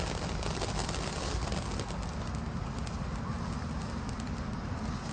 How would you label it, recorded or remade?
recorded